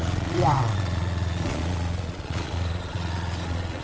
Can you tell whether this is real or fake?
fake